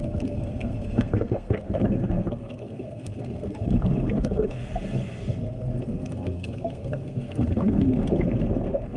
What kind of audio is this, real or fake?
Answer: fake